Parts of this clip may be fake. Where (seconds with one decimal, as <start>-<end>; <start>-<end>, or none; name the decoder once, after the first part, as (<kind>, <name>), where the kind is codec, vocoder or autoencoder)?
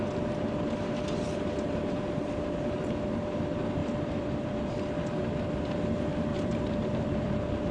3.8-4.7 (vocoder, BigVGAN v2); 6.3-7.3